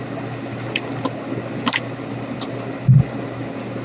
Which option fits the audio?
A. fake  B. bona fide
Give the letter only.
B